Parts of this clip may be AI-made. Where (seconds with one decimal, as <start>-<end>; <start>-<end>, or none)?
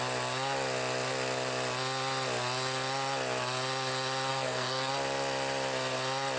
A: 4.3-4.9